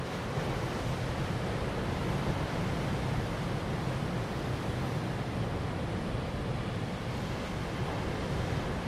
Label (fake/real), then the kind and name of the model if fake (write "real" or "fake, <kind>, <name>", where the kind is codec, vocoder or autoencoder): real